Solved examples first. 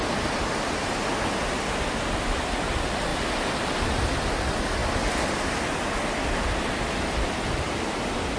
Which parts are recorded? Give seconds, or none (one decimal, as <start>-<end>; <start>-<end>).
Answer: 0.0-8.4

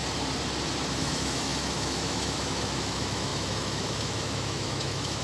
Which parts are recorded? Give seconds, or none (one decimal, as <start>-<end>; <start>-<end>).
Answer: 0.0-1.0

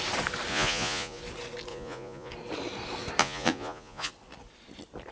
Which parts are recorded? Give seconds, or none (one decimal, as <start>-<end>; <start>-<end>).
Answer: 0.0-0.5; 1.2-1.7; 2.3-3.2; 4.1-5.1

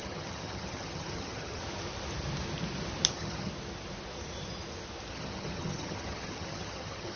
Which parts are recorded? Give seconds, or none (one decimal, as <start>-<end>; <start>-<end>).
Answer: 1.6-3.1; 3.5-5.1

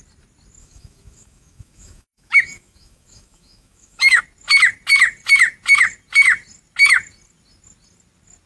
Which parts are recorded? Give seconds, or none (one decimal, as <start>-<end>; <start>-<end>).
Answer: 0.0-0.6; 4.2-8.5

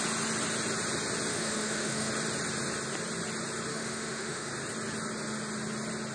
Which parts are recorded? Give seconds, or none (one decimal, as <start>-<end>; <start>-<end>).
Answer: 0.0-1.3; 2.1-3.7; 4.5-6.1

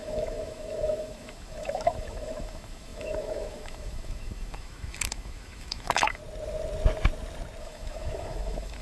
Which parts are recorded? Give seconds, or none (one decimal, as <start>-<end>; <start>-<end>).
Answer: 6.2-7.6